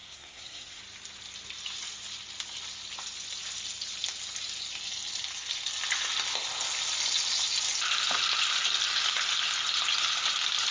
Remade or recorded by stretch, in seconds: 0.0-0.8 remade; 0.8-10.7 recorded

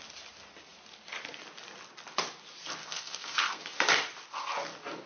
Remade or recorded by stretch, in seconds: 0.0-2.8 recorded; 2.8-3.6 remade; 3.6-5.1 recorded

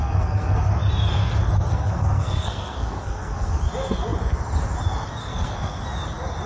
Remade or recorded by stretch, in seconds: 0.0-0.7 remade; 0.7-1.7 recorded; 1.7-3.6 remade; 3.6-5.2 recorded; 5.2-5.8 remade; 5.8-6.5 recorded

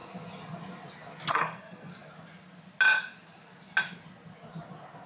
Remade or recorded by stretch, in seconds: 0.0-1.3 recorded; 1.3-1.9 remade; 1.9-5.1 recorded

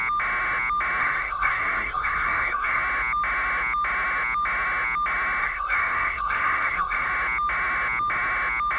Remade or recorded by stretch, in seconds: 0.0-1.0 recorded; 1.0-2.8 remade; 2.8-5.4 recorded; 5.4-7.1 remade; 7.1-8.8 recorded

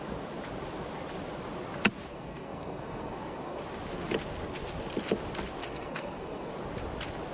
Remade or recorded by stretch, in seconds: 0.0-2.1 recorded; 2.1-3.6 remade; 3.6-5.6 recorded; 5.6-6.5 remade; 6.5-7.3 recorded

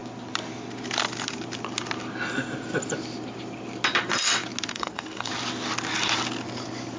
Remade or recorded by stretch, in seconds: 0.0-4.7 recorded; 4.7-5.3 remade; 5.3-7.0 recorded